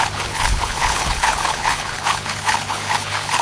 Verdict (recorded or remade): remade